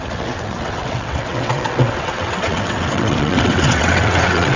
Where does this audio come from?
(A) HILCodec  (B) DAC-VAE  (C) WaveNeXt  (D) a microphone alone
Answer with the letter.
C